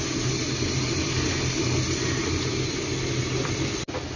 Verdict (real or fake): real